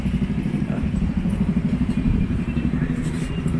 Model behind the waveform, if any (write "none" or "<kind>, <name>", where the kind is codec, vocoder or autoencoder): vocoder, BigVGAN v2